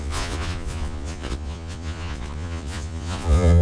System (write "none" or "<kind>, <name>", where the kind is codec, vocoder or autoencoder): vocoder, Vocos